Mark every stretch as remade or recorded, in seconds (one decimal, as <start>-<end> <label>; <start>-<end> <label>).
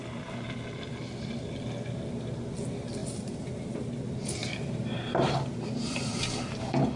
0.0-3.0 recorded; 3.0-4.0 remade; 4.0-4.4 recorded; 4.4-6.2 remade; 6.2-7.0 recorded